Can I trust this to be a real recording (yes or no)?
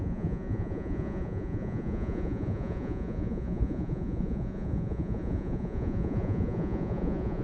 no